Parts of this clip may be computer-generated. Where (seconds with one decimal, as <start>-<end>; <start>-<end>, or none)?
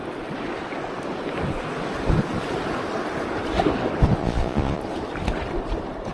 4.2-4.8